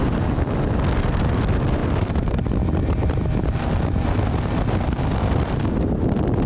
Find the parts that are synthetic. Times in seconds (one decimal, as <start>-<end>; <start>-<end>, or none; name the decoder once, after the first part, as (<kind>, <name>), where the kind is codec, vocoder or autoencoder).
none